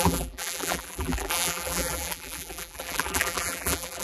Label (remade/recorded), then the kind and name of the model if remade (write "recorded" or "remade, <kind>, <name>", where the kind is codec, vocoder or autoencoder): remade, vocoder, BigVGAN v2